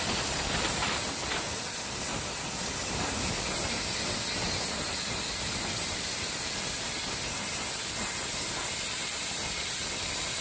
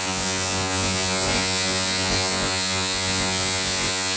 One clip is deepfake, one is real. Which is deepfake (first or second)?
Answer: second